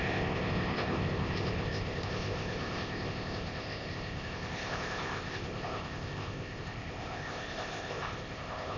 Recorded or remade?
remade